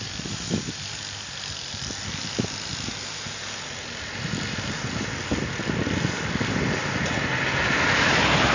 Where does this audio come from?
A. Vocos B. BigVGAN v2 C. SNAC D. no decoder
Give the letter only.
D